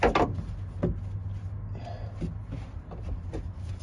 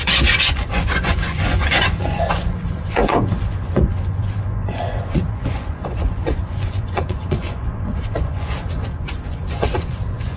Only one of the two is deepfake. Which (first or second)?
second